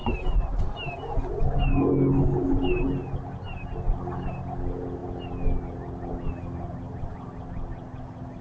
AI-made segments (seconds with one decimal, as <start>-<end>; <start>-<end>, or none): none